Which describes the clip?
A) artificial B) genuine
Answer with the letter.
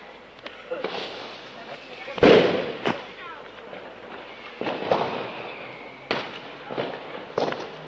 B